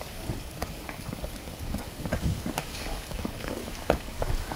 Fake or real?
fake